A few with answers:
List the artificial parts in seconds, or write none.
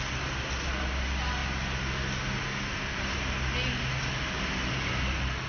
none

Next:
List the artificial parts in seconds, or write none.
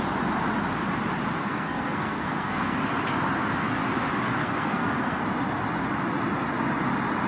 1.4-2.8 (codec, SNAC); 4.4-5.2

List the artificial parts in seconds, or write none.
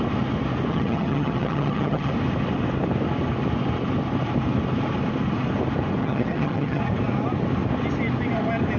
0.7-2.1 (vocoder, HiFi-GAN); 6.0-6.8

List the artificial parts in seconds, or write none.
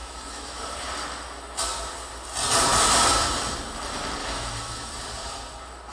0.0-0.6 (autoencoder, DAC-VAE); 4.2-4.9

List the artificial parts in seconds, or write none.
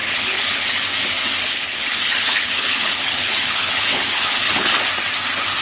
0.0-0.8 (codec, HILCodec); 1.4-4.8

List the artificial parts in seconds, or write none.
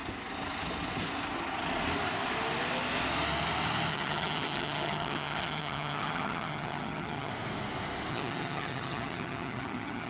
3.9-7.3 (vocoder, HiFi-GAN); 8.1-10.1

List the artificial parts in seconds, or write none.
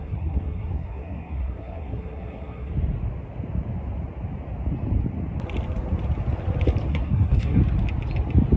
0.0-2.7 (codec, SNAC); 6.9-7.6